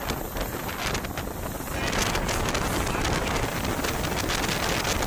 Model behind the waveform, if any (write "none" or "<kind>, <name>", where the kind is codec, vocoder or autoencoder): none